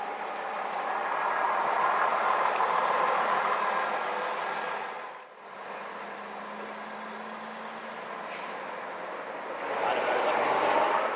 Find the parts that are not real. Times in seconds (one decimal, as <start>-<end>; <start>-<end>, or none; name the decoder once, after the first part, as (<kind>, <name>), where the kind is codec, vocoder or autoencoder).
2.1-3.7 (vocoder, BigVGAN v2)